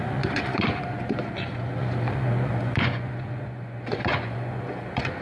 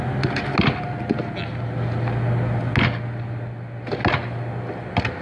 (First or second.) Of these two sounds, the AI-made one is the first